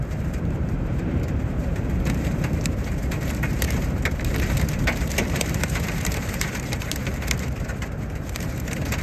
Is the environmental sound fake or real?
fake